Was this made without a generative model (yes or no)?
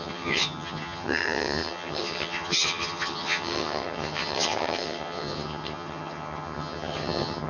no